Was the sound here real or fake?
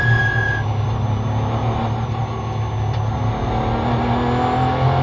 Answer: real